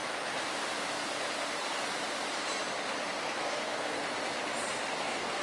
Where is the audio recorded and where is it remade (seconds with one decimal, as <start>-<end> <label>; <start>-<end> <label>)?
0.0-3.2 recorded; 3.2-4.0 remade; 4.0-5.0 recorded; 5.0-5.4 remade